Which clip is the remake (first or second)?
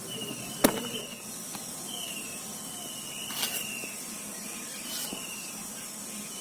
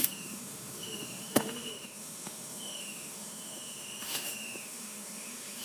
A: second